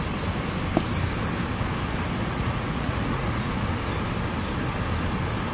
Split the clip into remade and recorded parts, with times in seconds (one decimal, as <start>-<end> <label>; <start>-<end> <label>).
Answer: 0.0-2.2 recorded; 2.2-3.5 remade; 3.5-5.5 recorded